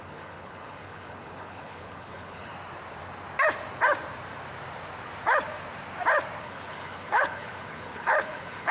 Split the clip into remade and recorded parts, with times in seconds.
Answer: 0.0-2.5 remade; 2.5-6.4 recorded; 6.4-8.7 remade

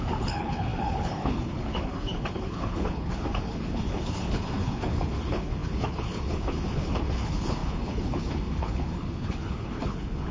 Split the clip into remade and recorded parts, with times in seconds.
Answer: 0.0-10.3 remade

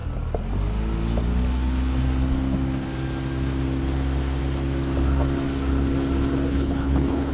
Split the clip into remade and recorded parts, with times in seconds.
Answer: 0.0-6.5 recorded; 6.5-7.3 remade

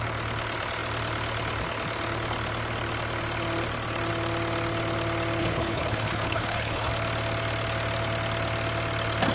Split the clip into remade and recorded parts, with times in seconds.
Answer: 0.0-5.4 recorded; 5.4-6.9 remade; 6.9-9.3 recorded

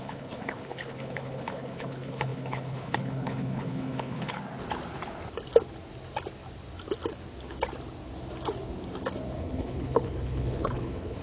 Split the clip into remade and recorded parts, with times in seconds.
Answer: 0.0-4.4 remade; 4.4-9.4 recorded; 9.4-11.2 remade

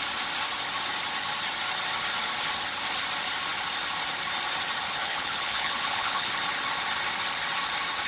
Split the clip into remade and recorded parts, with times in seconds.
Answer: 0.0-5.0 recorded; 5.0-6.3 remade; 6.3-8.1 recorded